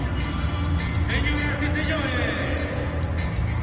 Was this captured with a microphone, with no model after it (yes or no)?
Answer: yes